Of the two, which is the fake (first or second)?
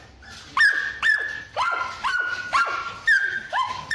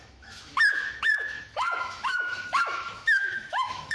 second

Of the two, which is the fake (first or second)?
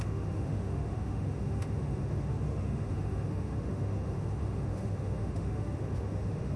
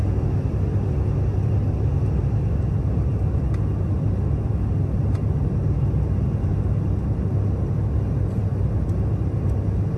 first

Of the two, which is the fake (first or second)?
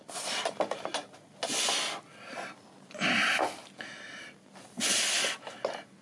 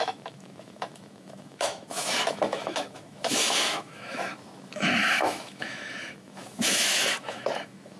second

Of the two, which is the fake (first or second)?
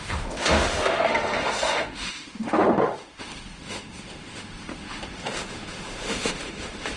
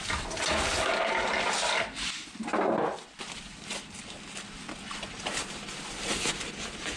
first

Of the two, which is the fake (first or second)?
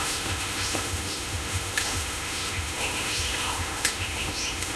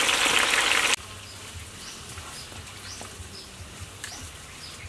first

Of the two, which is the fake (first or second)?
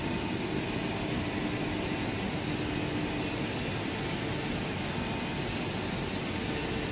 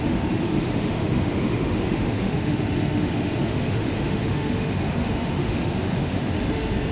second